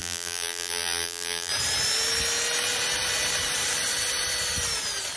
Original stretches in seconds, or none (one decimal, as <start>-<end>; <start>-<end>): 1.5-5.2